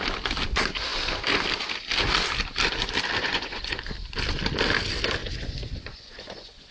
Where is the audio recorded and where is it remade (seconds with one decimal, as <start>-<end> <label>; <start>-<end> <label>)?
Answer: 0.0-3.2 recorded; 3.2-3.8 remade; 3.8-5.2 recorded; 5.2-6.7 remade